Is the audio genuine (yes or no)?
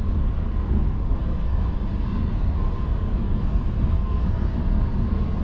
no